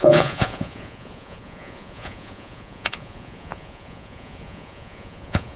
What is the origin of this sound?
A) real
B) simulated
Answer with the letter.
B